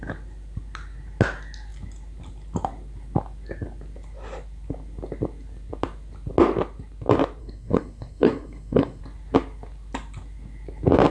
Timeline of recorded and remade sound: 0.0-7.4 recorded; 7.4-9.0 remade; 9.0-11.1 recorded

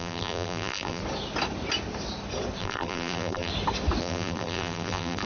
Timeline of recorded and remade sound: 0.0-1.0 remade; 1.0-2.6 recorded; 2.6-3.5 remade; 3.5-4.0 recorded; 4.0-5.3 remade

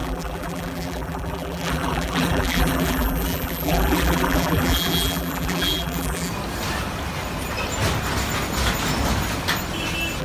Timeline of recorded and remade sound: 0.0-6.3 remade; 6.3-10.2 recorded

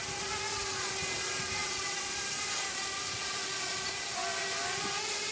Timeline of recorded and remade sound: 0.0-0.9 recorded; 0.9-5.3 remade